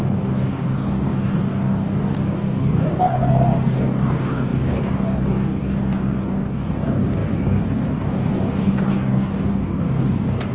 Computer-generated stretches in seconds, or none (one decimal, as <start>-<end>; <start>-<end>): 0.0-10.5